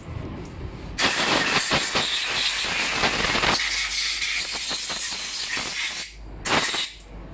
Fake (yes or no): no